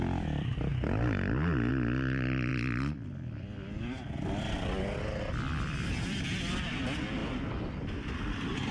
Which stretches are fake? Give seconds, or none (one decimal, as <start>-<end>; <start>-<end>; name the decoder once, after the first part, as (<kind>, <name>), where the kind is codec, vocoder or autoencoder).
0.0-0.7 (vocoder, BigVGAN v2); 1.7-8.7